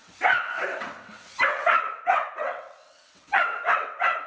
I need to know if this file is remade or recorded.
remade